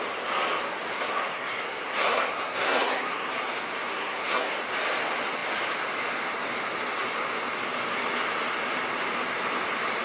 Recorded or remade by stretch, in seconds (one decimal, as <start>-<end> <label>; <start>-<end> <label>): 0.0-0.9 recorded; 0.9-3.3 remade; 3.3-3.9 recorded; 3.9-4.5 remade; 4.5-10.0 recorded